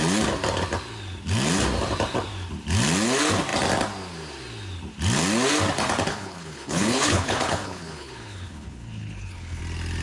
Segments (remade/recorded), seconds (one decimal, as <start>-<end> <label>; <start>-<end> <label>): 0.0-6.1 recorded; 6.1-9.6 remade; 9.6-10.0 recorded